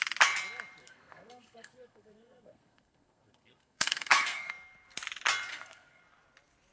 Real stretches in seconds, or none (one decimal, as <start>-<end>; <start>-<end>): 0.0-0.8; 4.5-5.5; 6.0-6.7